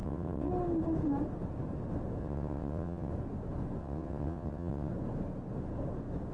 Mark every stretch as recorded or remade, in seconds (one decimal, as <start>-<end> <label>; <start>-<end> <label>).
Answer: 0.0-0.5 remade; 0.5-2.2 recorded; 2.2-3.1 remade; 3.1-3.8 recorded; 3.8-4.9 remade; 4.9-6.3 recorded